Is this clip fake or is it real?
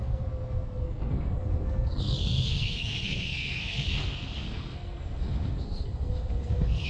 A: fake